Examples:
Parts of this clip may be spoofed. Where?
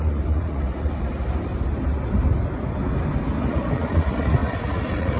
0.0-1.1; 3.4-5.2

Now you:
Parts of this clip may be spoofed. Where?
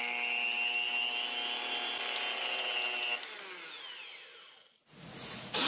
4.8-5.7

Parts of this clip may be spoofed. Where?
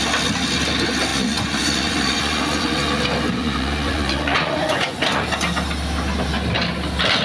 1.1-3.0; 3.4-5.2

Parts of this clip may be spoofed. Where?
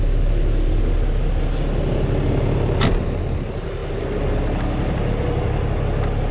none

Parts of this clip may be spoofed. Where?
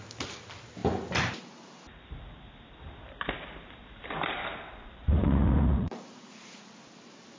4.7-6.7